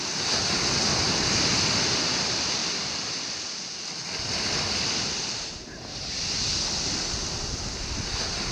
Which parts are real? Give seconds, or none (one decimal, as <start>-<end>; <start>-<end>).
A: 0.0-8.5